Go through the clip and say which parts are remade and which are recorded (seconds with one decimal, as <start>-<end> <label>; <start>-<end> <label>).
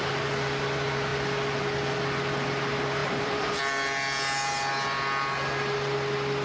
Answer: 0.0-3.0 recorded; 3.0-3.6 remade; 3.6-6.4 recorded